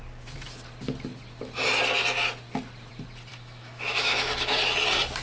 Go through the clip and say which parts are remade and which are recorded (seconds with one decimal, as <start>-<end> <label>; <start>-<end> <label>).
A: 0.0-3.3 recorded; 3.3-4.6 remade; 4.6-5.2 recorded